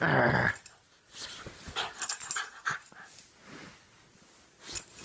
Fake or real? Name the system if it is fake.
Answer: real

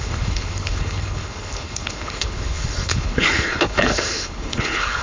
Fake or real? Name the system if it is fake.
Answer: fake, codec, HILCodec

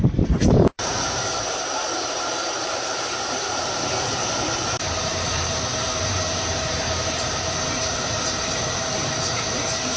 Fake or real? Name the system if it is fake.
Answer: fake, vocoder, BigVGAN v2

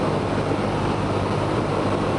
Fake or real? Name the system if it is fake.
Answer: real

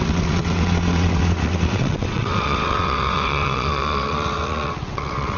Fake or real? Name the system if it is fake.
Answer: fake, vocoder, WaveNeXt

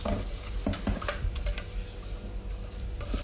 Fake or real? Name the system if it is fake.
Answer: real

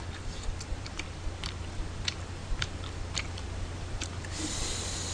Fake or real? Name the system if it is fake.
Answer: fake, vocoder, BigVGAN v2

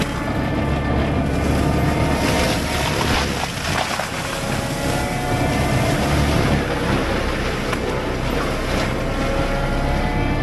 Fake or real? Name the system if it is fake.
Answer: real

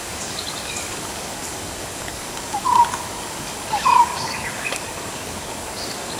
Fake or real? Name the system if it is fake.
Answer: fake, codec, DAC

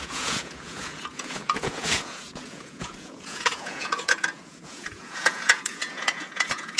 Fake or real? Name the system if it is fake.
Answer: fake, vocoder, Vocos